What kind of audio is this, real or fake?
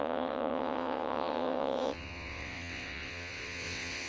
fake